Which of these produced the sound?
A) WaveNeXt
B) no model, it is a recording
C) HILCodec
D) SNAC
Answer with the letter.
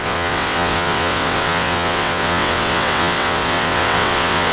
A